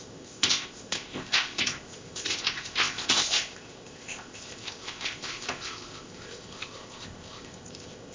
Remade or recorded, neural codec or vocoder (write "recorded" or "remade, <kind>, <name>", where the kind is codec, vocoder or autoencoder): remade, codec, ZipCodec